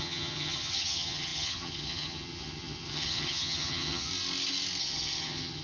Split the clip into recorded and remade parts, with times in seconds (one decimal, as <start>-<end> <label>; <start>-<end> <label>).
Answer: 0.0-4.1 remade; 4.1-4.8 recorded; 4.8-5.6 remade